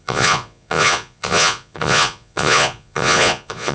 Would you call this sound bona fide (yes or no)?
no